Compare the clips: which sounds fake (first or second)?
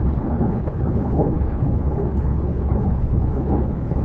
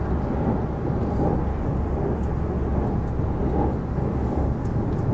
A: first